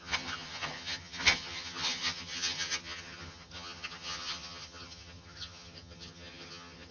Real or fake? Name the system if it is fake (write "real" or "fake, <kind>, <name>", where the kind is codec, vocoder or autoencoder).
fake, vocoder, HiFi-GAN